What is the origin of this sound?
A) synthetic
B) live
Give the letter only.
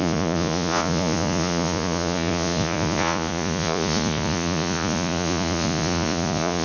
A